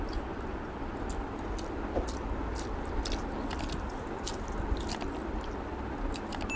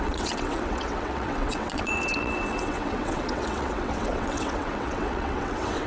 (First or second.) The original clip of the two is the first